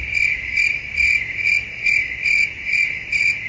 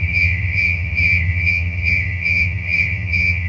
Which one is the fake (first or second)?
second